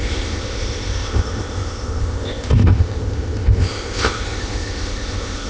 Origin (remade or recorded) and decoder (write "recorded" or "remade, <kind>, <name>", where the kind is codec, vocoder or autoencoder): remade, codec, ZipCodec